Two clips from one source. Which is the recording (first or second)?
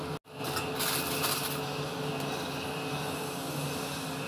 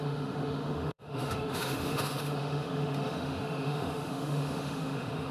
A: first